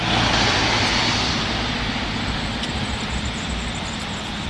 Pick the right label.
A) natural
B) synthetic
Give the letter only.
A